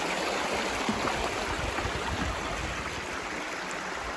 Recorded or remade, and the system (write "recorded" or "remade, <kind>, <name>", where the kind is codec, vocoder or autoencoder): recorded